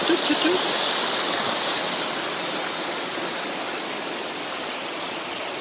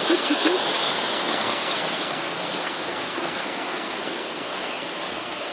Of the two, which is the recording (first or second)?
first